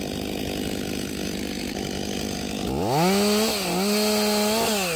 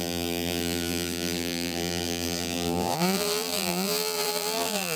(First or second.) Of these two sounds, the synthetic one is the second